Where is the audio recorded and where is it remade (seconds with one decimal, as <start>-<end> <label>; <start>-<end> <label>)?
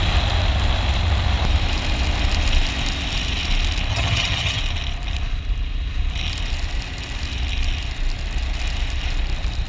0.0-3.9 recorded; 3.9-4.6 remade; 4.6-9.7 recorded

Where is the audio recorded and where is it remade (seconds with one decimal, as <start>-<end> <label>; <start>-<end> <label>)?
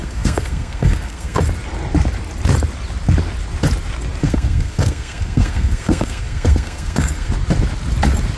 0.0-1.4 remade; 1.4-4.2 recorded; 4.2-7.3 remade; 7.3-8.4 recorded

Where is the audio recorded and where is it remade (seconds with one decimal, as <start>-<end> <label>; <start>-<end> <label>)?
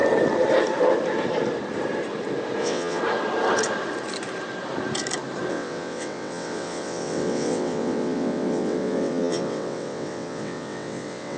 0.0-2.6 recorded; 2.6-3.0 remade; 3.0-5.5 recorded; 5.5-11.4 remade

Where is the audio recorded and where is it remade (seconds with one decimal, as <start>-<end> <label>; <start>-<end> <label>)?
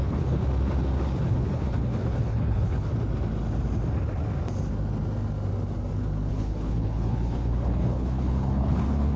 0.0-0.4 remade; 0.4-1.2 recorded; 1.2-2.9 remade; 2.9-6.3 recorded; 6.3-9.2 remade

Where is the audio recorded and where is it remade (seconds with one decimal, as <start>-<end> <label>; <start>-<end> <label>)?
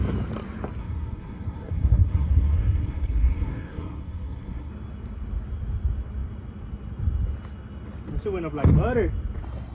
0.0-0.8 recorded; 0.8-4.7 remade; 4.7-9.7 recorded